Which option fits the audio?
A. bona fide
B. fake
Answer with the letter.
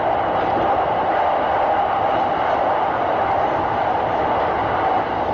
A